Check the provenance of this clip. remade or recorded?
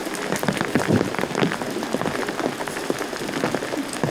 recorded